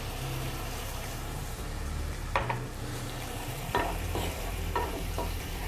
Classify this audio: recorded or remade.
remade